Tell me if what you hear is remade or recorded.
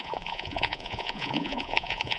remade